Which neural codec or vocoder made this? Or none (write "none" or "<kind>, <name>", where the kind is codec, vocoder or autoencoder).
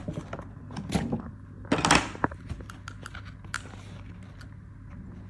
none